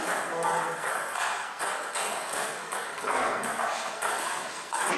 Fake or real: fake